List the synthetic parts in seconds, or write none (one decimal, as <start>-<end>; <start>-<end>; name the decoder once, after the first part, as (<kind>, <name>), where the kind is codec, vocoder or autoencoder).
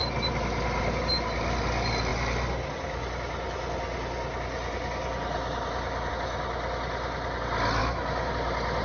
7.8-8.3 (autoencoder, DAC-VAE)